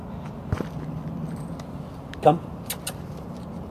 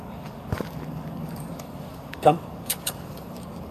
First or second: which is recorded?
first